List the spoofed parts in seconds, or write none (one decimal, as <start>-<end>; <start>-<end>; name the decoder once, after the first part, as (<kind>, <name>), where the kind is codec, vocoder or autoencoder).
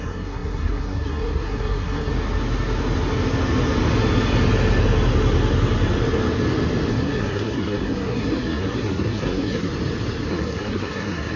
0.0-2.1 (codec, SNAC); 6.9-9.7; 10.3-11.4